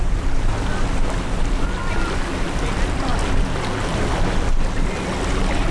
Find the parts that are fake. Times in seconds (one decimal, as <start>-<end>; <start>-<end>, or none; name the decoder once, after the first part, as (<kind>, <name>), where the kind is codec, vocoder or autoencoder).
none